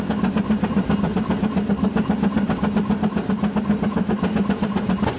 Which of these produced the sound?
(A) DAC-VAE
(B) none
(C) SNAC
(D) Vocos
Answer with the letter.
B